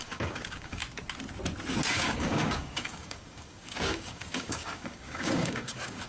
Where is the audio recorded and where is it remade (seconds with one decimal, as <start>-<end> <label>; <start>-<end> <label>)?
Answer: 0.0-0.8 remade; 0.8-1.9 recorded; 1.9-6.1 remade